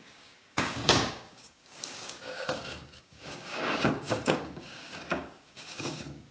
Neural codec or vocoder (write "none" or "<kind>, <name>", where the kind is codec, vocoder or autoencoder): codec, DAC